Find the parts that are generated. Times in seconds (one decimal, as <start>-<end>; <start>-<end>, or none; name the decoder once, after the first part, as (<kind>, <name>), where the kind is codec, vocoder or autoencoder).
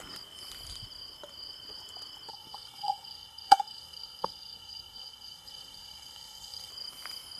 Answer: 2.3-6.7 (codec, SNAC)